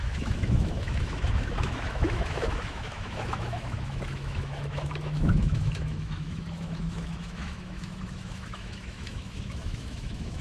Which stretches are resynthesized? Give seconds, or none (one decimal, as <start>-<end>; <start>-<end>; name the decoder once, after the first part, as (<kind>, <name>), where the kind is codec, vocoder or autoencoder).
0.0-10.4 (autoencoder, DAC-VAE)